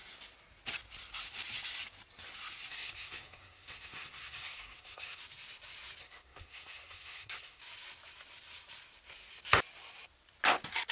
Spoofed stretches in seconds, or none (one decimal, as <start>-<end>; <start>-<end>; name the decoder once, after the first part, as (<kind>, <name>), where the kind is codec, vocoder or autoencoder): 2.7-5.2 (codec, SNAC); 6.0-7.6

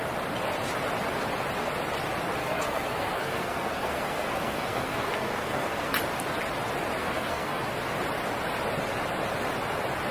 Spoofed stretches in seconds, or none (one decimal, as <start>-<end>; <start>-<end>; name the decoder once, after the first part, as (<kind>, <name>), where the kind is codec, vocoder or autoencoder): 2.4-5.9 (codec, SNAC); 7.0-7.7

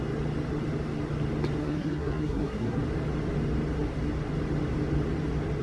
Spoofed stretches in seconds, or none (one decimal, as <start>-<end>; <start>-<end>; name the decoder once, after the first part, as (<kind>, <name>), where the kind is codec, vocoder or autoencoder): 1.6-2.8 (codec, SNAC)

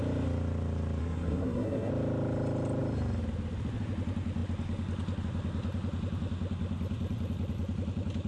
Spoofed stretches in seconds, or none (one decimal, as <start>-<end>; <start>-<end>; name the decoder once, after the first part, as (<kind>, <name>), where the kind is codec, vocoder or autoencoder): 1.0-1.9 (codec, SNAC)

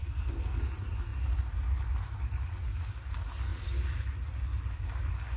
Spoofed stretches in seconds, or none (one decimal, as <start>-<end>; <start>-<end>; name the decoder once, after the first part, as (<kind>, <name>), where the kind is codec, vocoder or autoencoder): 0.0-0.6 (codec, SNAC)